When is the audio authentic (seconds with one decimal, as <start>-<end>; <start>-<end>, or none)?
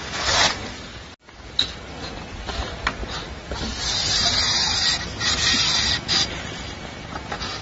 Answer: 0.0-7.6